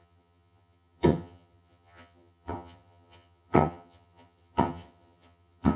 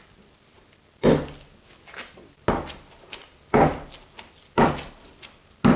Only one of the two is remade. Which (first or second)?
first